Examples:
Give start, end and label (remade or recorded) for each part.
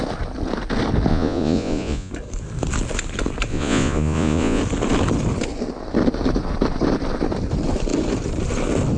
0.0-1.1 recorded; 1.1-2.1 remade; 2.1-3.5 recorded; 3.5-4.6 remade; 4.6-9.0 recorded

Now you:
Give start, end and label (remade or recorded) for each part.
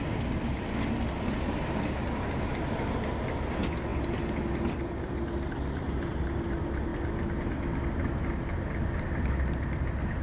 0.0-10.2 recorded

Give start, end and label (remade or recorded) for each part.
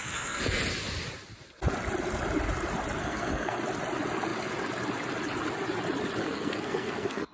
0.0-0.6 remade; 0.6-3.0 recorded; 3.0-3.6 remade; 3.6-6.2 recorded; 6.2-7.3 remade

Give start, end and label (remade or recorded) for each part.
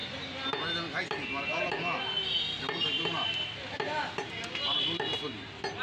0.0-5.8 recorded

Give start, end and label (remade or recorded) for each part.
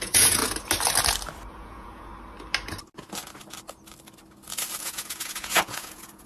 0.0-0.4 remade; 0.4-1.5 recorded; 1.5-2.1 remade; 2.1-4.8 recorded; 4.8-6.3 remade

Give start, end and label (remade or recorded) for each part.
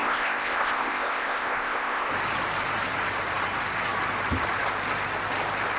0.0-2.1 remade; 2.1-5.8 recorded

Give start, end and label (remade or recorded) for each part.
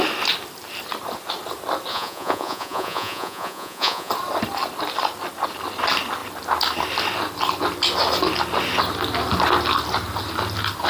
0.0-1.9 recorded; 1.9-4.1 remade; 4.1-10.9 recorded